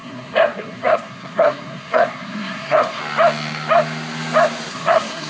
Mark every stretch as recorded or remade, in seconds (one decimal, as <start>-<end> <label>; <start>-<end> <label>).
0.0-3.0 remade; 3.0-4.7 recorded; 4.7-5.3 remade